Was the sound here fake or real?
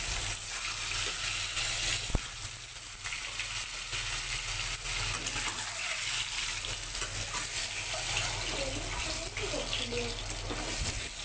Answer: real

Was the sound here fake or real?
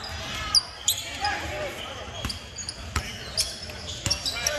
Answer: real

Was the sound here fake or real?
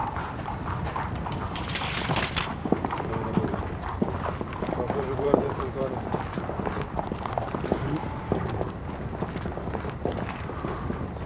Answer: fake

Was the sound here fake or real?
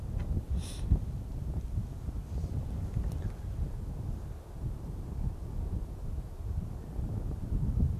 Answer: real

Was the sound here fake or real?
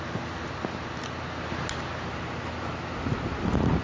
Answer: real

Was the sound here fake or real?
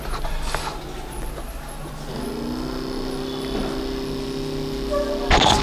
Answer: real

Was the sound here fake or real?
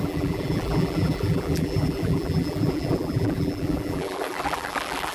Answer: fake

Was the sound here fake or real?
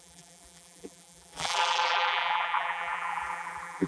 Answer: fake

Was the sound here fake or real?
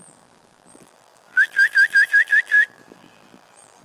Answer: fake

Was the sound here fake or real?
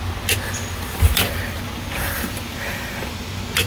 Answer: real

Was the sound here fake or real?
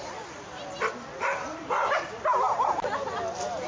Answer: real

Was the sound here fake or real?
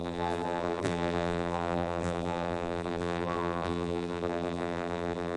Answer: fake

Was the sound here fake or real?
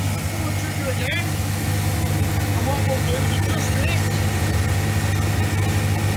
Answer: real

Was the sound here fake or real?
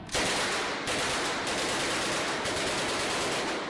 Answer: real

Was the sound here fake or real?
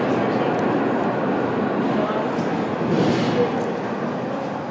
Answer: real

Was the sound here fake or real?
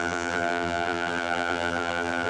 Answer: fake